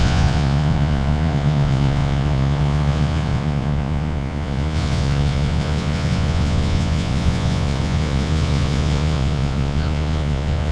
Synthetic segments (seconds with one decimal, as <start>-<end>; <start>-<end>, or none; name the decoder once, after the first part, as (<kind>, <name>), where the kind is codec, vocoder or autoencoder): 0.0-10.7 (vocoder, Vocos)